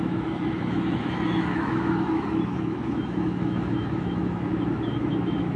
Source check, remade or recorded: remade